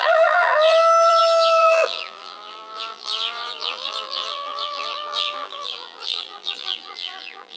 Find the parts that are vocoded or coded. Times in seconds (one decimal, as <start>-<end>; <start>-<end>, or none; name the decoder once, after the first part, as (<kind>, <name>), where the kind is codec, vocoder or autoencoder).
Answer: 0.0-7.6 (vocoder, BigVGAN v2)